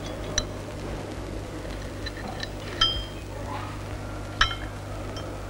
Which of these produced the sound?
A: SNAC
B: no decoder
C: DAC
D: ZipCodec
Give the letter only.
B